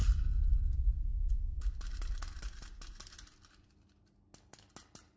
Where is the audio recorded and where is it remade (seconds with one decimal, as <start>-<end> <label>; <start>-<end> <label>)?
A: 0.0-5.2 recorded